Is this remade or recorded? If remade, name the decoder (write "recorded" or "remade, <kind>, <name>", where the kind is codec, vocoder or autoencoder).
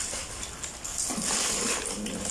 recorded